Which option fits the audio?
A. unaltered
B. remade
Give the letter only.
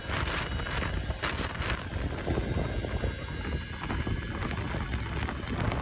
A